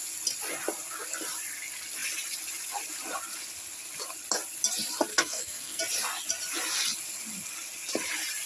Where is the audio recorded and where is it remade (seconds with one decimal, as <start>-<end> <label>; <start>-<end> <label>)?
0.0-5.1 recorded; 5.1-5.8 remade; 5.8-8.5 recorded